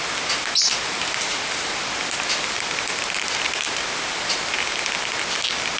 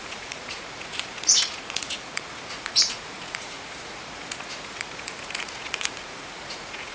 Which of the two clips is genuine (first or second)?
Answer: first